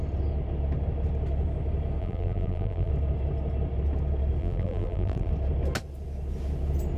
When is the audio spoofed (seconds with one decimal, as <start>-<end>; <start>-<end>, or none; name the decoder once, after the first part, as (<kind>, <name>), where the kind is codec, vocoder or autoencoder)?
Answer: 2.0-2.9 (vocoder, BigVGAN v2); 4.4-5.3